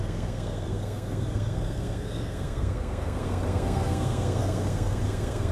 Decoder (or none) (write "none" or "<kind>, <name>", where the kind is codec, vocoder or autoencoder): codec, SNAC